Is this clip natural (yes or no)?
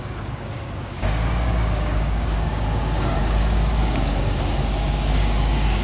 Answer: no